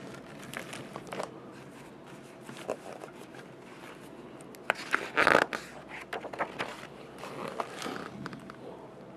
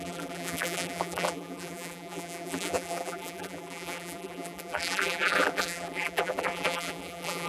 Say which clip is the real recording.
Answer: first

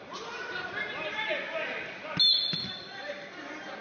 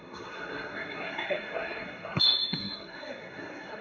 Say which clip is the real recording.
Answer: first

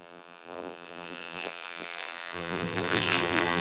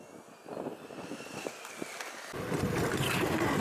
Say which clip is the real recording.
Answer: second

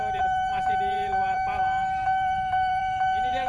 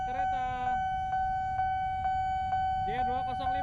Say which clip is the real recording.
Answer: second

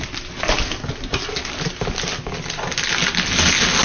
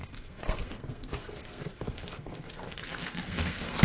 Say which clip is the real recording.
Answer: first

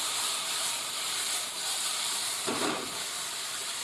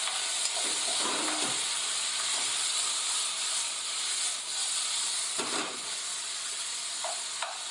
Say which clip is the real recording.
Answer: second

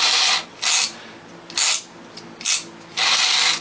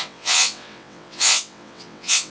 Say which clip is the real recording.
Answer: first